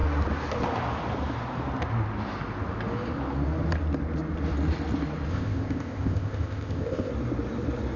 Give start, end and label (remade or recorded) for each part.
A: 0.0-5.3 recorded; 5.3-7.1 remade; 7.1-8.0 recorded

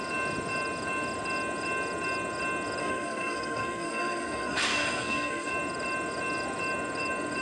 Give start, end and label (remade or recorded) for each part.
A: 0.0-2.8 recorded; 2.8-5.5 remade; 5.5-7.4 recorded

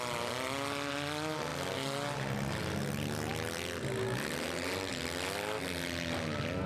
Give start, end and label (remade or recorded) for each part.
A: 0.0-6.7 recorded